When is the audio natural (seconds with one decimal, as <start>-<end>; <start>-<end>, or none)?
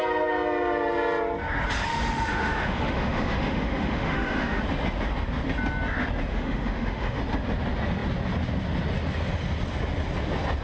0.0-1.9; 4.6-6.3; 7.2-10.6